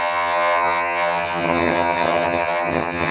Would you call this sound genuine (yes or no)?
no